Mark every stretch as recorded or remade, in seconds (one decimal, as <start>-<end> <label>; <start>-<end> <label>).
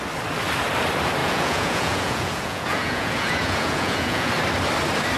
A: 0.0-1.2 recorded; 1.2-4.3 remade; 4.3-5.2 recorded